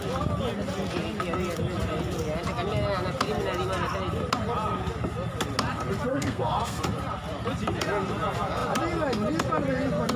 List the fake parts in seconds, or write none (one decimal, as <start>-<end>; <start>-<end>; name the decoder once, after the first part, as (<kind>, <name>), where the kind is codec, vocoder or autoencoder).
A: 6.1-6.8 (codec, SNAC)